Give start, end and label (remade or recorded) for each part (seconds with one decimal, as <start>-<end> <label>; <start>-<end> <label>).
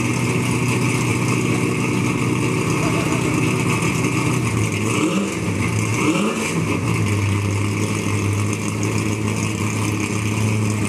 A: 0.0-10.9 recorded